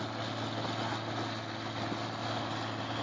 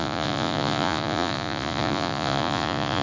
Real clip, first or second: first